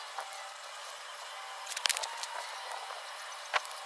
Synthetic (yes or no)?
no